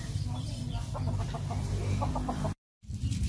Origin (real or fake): fake